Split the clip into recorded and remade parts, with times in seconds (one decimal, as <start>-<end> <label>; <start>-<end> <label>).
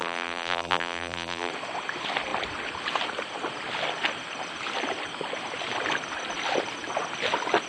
0.0-1.5 remade; 1.5-7.7 recorded